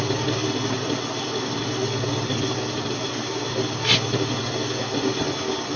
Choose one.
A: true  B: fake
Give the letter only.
A